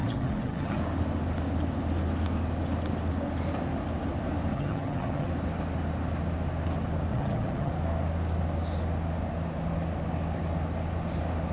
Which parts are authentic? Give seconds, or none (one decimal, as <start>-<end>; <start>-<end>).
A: 0.8-4.5; 5.3-7.1; 7.7-11.5